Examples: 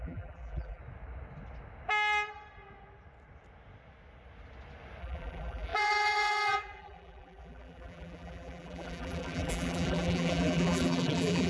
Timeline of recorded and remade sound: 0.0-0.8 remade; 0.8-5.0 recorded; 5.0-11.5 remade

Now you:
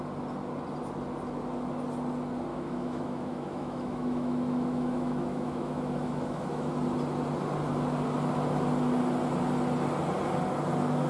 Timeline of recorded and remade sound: 0.0-2.5 recorded; 2.5-6.7 remade; 6.7-11.1 recorded

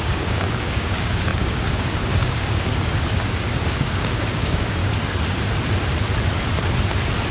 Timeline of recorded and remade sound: 0.0-2.7 remade; 2.7-3.6 recorded; 3.6-4.8 remade; 4.8-7.3 recorded

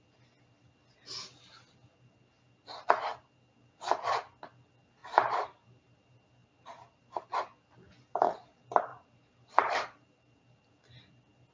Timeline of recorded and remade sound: 0.0-5.0 recorded; 5.0-6.0 remade; 6.0-6.4 recorded; 6.4-7.2 remade; 7.2-8.9 recorded; 8.9-10.7 remade; 10.7-11.5 recorded

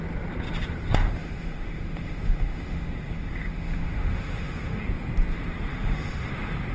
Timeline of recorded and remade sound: 0.0-1.0 recorded; 1.0-4.8 remade; 4.8-5.7 recorded; 5.7-6.3 remade; 6.3-6.7 recorded

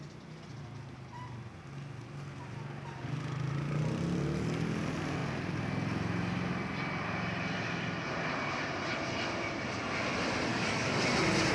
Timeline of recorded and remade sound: 0.0-10.5 recorded; 10.5-11.1 remade; 11.1-11.5 recorded

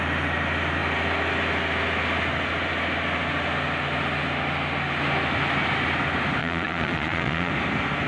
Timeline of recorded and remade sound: 0.0-6.4 recorded; 6.4-7.5 remade; 7.5-8.1 recorded

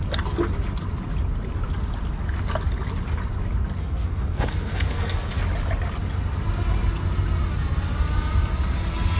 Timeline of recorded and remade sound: 0.0-3.8 recorded; 3.8-5.4 remade; 5.4-9.2 recorded